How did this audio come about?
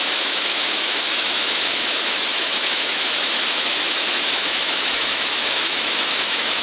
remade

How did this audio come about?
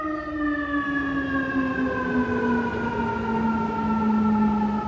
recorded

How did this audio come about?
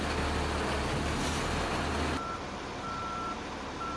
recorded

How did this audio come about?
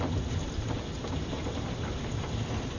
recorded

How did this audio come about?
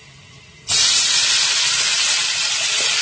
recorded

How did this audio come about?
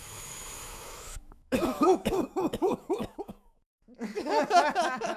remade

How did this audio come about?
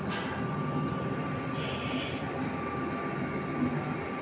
recorded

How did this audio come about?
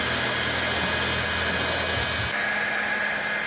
recorded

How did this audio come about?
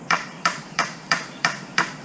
remade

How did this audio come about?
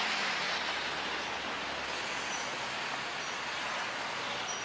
recorded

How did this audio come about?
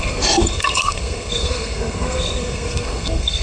remade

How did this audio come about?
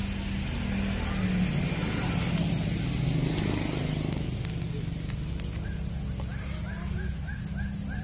recorded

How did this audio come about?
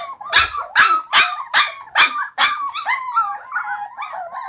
recorded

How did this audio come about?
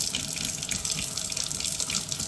recorded